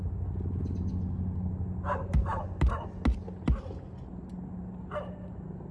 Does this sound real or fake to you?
real